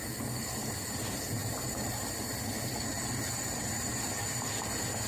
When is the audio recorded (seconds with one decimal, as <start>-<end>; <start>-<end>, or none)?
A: 0.0-5.1